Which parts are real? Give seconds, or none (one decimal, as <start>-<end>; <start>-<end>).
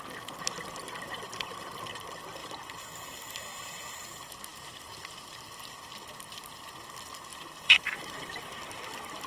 0.0-2.4; 3.8-7.3; 8.3-9.3